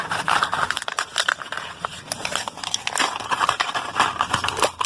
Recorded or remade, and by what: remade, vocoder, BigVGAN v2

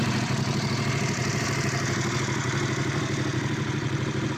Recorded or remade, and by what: remade, vocoder, BigVGAN v2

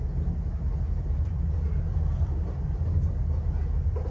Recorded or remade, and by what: recorded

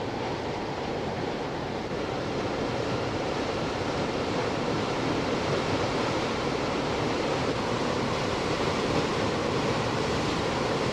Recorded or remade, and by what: remade, vocoder, BigVGAN v2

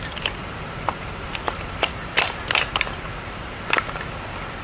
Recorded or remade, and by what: recorded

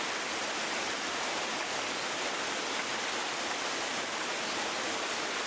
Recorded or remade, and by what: recorded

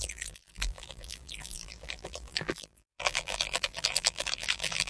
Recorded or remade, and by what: remade, vocoder, BigVGAN v2